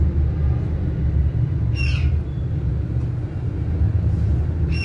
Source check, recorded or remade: recorded